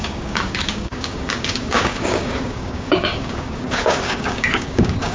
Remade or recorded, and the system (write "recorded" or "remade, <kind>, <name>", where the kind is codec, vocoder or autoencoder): remade, codec, DAC